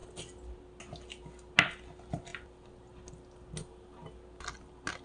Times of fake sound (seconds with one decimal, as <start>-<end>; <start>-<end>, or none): none